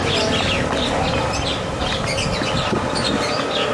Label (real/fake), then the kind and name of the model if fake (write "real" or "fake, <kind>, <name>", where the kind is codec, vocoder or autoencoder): real